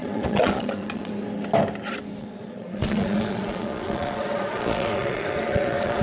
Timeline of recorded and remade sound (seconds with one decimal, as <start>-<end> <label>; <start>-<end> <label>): 0.0-1.1 remade; 1.1-2.2 recorded; 2.2-6.0 remade